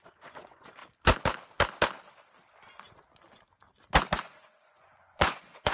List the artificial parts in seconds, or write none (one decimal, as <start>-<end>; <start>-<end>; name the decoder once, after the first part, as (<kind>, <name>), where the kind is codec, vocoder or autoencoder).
0.0-0.8 (vocoder, Vocos); 4.2-5.7